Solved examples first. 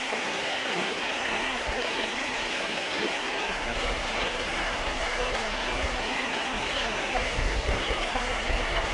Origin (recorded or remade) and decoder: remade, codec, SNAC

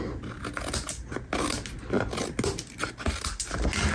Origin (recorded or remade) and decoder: recorded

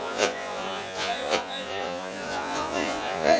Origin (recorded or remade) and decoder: remade, vocoder, Vocos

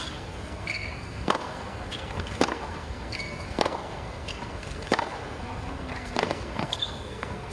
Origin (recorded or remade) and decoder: remade, codec, SNAC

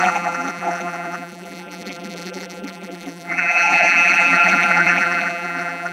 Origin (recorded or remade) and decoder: remade, vocoder, BigVGAN v2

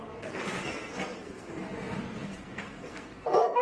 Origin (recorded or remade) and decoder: remade, codec, SNAC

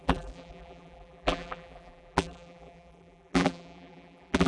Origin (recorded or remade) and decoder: remade, vocoder, BigVGAN v2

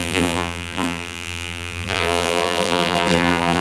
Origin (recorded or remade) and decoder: remade, vocoder, BigVGAN v2